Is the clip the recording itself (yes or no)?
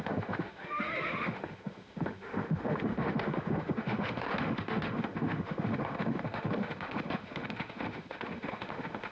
no